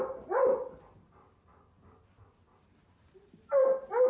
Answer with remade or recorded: recorded